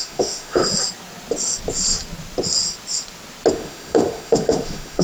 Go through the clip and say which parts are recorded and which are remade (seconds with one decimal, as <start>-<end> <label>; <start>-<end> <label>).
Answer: 0.0-0.6 remade; 0.6-3.5 recorded; 3.5-5.0 remade